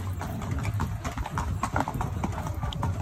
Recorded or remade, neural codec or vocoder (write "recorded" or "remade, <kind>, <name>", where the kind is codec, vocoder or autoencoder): recorded